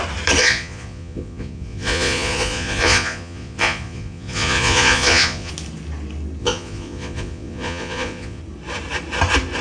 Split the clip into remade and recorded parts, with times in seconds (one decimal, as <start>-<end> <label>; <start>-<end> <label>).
0.0-0.4 recorded; 0.4-5.5 remade; 5.5-6.4 recorded; 6.4-8.4 remade; 8.4-9.6 recorded